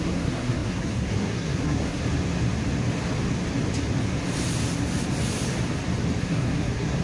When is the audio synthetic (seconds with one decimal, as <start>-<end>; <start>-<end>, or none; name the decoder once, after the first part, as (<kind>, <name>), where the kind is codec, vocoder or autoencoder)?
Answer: 0.0-2.0 (codec, SNAC); 6.2-7.0